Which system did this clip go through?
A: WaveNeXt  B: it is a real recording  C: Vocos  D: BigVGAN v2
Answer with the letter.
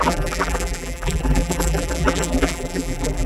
D